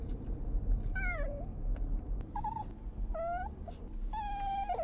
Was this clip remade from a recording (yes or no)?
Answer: no